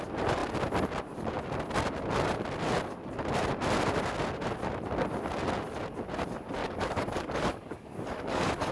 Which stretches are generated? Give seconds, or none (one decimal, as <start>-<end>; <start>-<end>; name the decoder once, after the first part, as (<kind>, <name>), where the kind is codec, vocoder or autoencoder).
6.6-8.7 (codec, DAC)